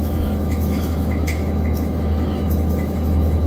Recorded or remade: remade